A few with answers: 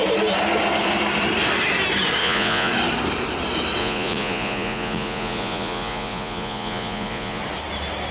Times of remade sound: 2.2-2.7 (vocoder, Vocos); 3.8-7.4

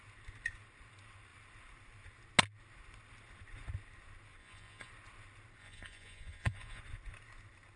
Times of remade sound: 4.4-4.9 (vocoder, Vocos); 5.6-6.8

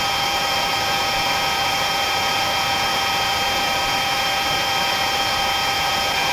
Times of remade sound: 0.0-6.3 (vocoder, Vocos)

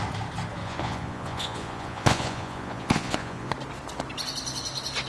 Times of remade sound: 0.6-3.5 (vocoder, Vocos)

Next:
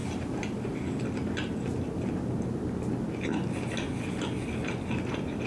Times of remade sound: none

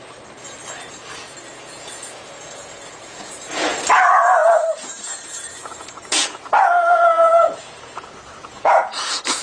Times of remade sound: 1.5-3.7 (vocoder, Vocos); 4.4-9.4

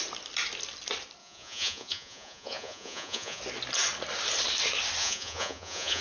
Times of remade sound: 1.2-3.4 (vocoder, Vocos); 5.0-6.0